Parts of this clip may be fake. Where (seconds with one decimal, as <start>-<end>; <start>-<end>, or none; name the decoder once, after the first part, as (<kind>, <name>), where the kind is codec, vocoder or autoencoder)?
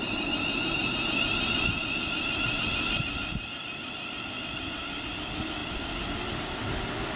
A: none